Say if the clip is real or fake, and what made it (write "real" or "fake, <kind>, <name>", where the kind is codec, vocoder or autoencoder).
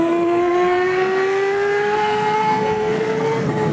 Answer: fake, codec, SNAC